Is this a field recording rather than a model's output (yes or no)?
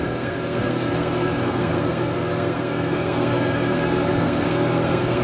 no